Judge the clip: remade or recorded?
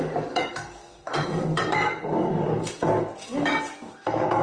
remade